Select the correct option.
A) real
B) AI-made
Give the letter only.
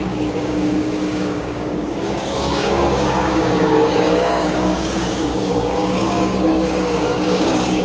B